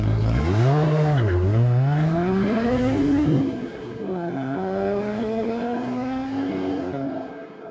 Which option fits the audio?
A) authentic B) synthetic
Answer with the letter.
B